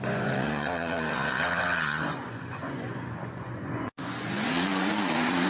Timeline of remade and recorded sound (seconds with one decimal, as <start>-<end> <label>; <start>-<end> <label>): 0.0-5.5 remade